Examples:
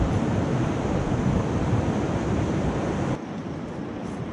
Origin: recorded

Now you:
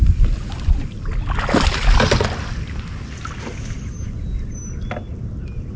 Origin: recorded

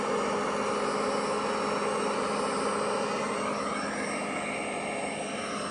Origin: recorded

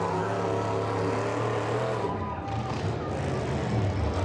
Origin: recorded